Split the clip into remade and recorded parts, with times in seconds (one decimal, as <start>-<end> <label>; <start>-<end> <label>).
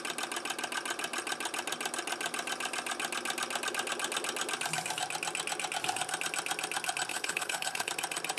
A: 0.0-7.1 recorded; 7.1-7.9 remade; 7.9-8.4 recorded